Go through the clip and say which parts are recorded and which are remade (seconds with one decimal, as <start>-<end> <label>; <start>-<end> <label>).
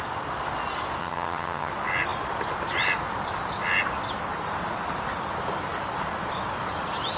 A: 0.0-1.0 recorded; 1.0-1.7 remade; 1.7-7.2 recorded